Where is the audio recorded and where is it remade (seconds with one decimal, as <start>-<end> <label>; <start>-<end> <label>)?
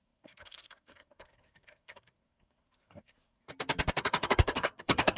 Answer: 0.0-3.5 remade; 3.5-4.0 recorded; 4.0-5.2 remade